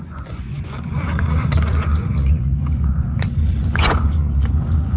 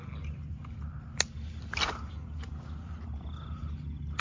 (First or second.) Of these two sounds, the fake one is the first